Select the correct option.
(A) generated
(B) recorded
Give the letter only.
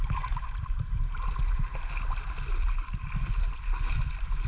B